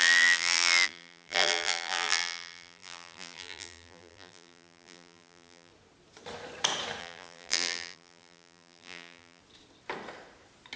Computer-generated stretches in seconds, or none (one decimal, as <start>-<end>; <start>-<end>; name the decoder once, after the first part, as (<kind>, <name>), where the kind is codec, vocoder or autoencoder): 0.0-5.7 (vocoder, BigVGAN v2); 7.0-9.4